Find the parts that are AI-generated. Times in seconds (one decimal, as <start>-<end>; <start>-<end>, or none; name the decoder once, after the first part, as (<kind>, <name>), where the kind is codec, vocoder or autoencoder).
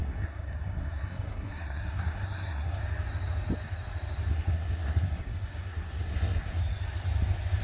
0.0-2.8 (codec, SNAC); 4.3-6.6